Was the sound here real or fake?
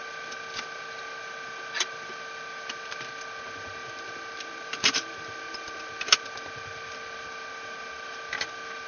real